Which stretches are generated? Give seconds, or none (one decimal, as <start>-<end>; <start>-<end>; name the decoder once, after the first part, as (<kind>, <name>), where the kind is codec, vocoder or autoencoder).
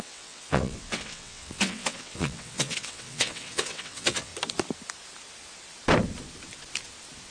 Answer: 0.0-4.3 (vocoder, WaveNeXt)